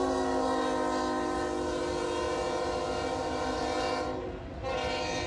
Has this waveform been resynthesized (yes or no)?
no